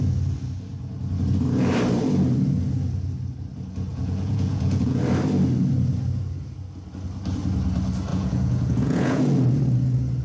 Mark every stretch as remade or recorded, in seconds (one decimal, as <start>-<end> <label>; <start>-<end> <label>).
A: 0.0-3.9 recorded; 3.9-5.0 remade; 5.0-8.1 recorded; 8.1-9.2 remade; 9.2-10.2 recorded